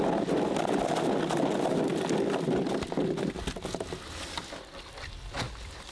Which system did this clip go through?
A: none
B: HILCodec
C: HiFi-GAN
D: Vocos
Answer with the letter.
A